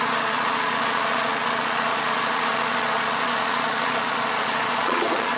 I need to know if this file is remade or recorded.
remade